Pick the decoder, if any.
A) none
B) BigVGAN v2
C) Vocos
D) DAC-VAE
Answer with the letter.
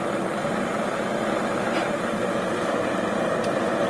B